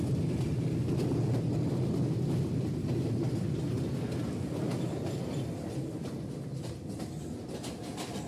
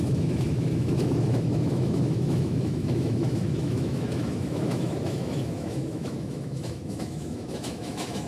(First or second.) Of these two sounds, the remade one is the second